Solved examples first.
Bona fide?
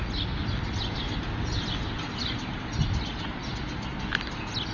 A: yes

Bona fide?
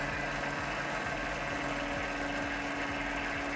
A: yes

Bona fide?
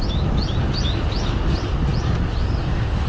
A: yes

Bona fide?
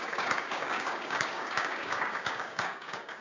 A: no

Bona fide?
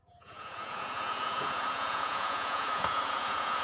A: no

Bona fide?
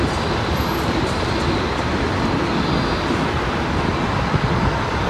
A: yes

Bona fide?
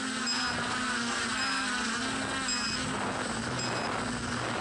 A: yes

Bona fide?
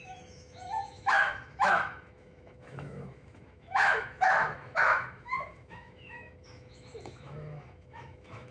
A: no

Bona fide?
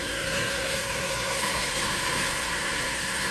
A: no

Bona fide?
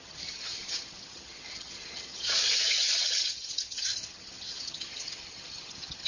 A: no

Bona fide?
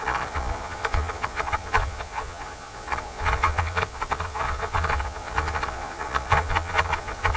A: no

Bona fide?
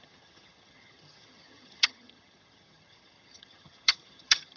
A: no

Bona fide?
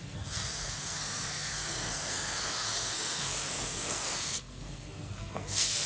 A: no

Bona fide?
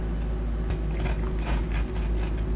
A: yes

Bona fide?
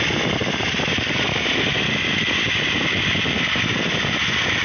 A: yes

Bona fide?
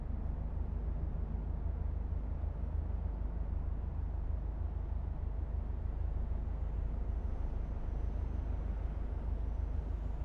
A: yes